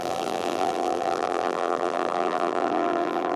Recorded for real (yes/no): no